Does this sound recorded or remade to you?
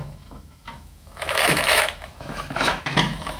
remade